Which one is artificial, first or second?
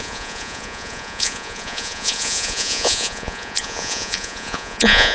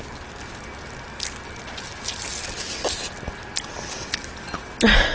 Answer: first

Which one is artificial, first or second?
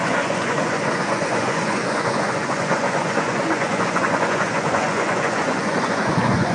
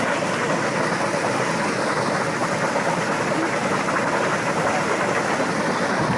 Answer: first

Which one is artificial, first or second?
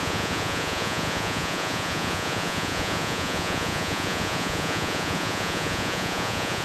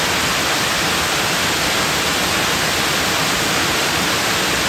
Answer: first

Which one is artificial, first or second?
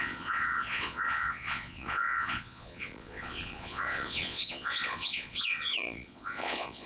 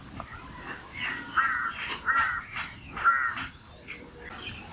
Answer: first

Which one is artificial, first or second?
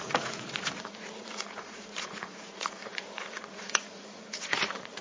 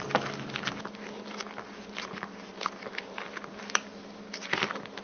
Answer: first